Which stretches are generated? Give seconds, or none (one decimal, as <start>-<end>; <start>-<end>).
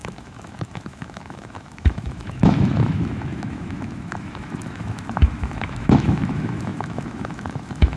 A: 0.0-8.0